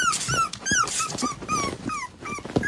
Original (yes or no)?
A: yes